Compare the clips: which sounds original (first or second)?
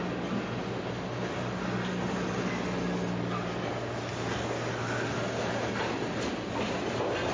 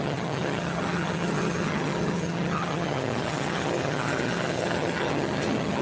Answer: first